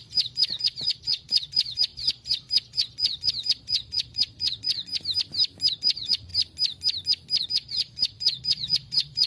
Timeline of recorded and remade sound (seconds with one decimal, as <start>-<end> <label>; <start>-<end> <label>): 0.0-4.9 remade; 4.9-5.7 recorded; 5.7-6.3 remade; 6.3-7.4 recorded; 7.4-9.3 remade